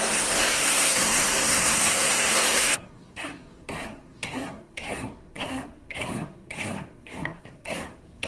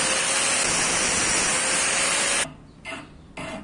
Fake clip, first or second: first